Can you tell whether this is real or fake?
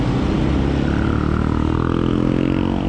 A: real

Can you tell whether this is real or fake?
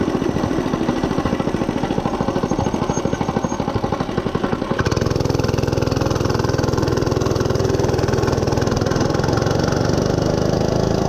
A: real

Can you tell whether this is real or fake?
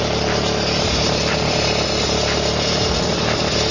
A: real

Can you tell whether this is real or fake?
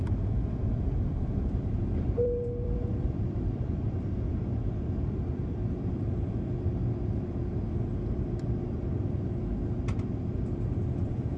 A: fake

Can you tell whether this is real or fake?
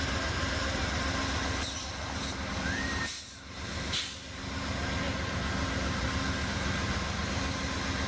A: real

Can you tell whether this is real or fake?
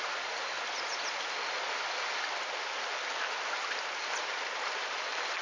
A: real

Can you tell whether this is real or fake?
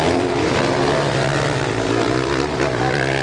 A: real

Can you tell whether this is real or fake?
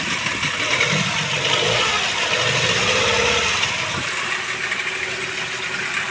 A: real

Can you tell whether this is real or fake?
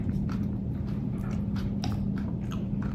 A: fake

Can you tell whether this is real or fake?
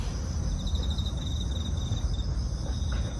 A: real